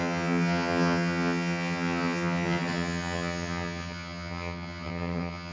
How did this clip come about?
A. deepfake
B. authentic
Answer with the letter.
A